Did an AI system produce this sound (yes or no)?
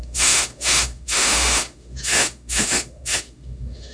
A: yes